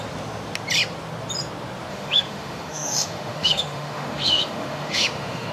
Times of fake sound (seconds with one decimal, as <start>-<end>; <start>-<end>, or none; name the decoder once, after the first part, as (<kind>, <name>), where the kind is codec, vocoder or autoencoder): 1.9-5.5 (autoencoder, DAC-VAE)